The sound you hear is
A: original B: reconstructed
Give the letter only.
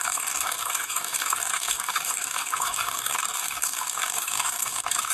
B